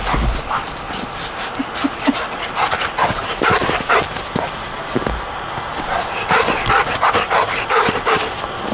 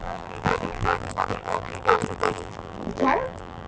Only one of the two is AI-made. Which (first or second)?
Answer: second